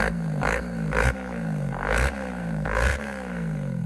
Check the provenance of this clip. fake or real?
fake